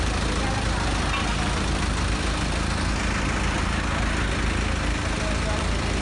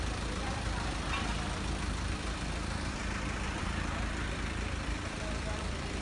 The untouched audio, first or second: first